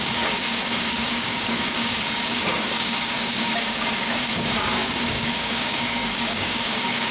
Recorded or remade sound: remade